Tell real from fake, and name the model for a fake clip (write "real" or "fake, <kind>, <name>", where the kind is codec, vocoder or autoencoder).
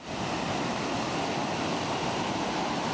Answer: real